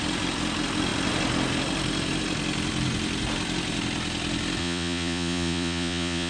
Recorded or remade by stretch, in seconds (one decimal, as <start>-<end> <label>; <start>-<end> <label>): 0.0-4.6 recorded; 4.6-6.3 remade